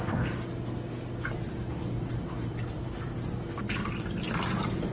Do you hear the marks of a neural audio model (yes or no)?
no